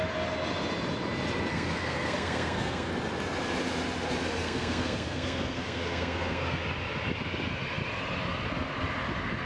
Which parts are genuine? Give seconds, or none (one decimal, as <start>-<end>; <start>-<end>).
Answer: 0.0-1.5; 2.9-4.4; 6.6-9.5